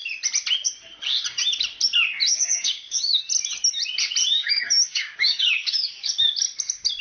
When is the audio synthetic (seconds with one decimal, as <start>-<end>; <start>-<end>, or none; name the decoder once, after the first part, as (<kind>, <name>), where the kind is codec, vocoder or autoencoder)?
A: 2.3-3.2 (codec, DAC); 4.4-6.1